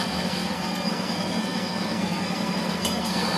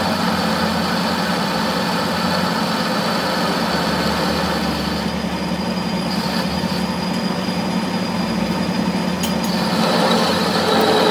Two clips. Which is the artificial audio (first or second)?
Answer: first